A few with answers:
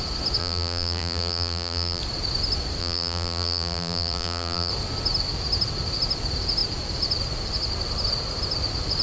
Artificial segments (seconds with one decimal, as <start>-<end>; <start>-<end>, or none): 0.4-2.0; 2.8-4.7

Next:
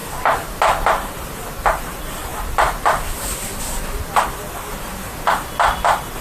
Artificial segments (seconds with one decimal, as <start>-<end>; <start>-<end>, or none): 0.0-0.5; 2.3-5.5

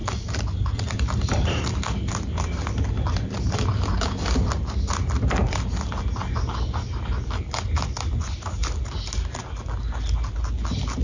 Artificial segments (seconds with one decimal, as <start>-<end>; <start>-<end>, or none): 0.0-1.6

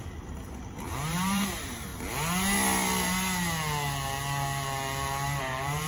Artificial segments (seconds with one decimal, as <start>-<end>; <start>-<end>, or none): 0.0-1.9; 5.4-5.9

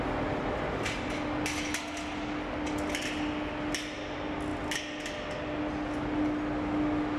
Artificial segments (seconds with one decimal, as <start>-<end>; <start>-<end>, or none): none